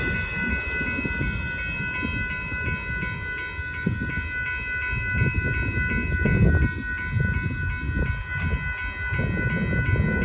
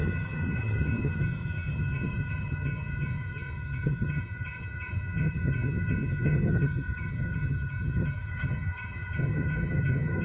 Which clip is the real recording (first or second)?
first